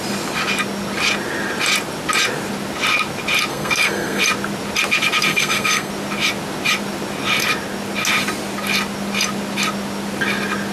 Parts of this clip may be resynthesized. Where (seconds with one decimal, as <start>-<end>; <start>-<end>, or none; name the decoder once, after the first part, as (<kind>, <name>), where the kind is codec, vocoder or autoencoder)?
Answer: 3.5-4.2 (codec, SNAC); 5.3-5.9